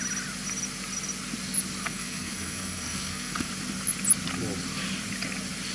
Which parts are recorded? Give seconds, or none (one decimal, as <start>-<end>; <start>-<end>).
0.0-1.8; 3.5-5.7